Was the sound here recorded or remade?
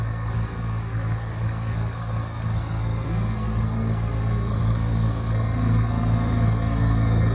remade